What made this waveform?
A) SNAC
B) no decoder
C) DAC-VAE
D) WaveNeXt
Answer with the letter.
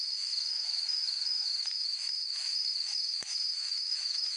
C